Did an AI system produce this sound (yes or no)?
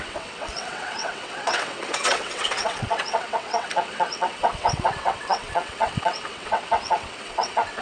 yes